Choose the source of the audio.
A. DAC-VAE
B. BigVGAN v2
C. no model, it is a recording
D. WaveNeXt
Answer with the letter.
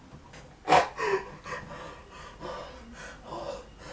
C